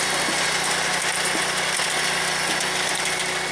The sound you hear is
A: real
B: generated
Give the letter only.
A